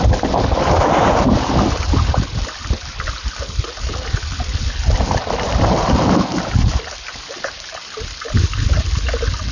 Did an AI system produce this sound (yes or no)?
no